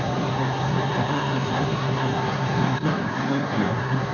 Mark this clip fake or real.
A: fake